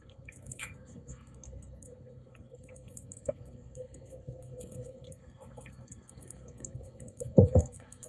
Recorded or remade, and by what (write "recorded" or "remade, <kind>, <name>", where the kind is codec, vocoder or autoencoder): remade, codec, SNAC